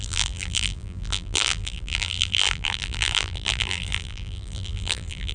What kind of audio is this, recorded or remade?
remade